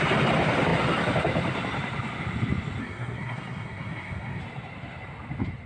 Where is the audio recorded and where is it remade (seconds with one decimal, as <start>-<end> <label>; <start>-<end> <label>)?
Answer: 0.0-2.8 recorded; 2.8-4.4 remade; 4.4-5.7 recorded